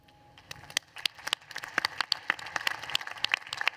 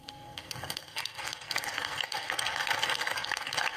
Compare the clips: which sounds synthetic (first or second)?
second